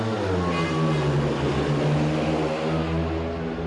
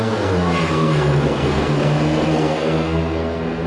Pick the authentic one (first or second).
first